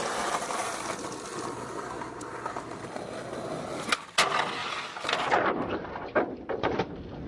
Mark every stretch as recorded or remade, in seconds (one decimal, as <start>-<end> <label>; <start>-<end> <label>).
0.0-4.6 recorded; 4.6-6.8 remade; 6.8-7.3 recorded